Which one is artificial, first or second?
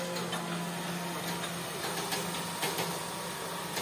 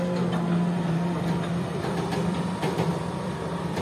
second